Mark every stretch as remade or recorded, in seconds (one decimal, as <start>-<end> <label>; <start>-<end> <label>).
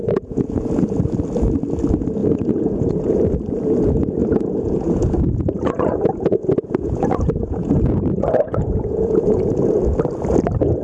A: 0.0-0.7 remade; 0.7-2.2 recorded; 2.2-3.3 remade; 3.3-4.2 recorded; 4.2-9.4 remade; 9.4-10.8 recorded